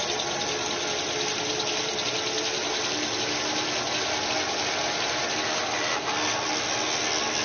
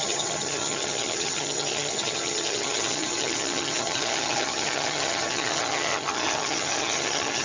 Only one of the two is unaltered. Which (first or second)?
first